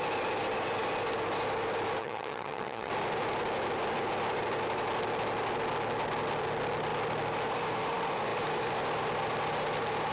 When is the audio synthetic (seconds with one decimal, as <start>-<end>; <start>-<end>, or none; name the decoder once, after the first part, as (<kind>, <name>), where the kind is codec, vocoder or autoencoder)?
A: 2.0-2.9 (vocoder, HiFi-GAN)